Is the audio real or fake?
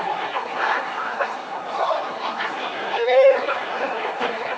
fake